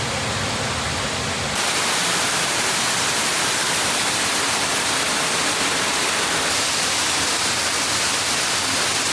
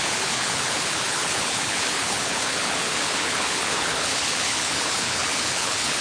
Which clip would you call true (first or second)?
first